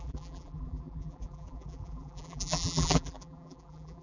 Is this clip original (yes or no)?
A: no